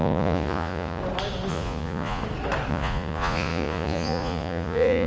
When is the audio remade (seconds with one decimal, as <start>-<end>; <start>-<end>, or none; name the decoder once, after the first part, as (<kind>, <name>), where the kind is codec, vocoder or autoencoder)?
0.0-1.0 (vocoder, Vocos); 1.5-2.2; 2.7-5.1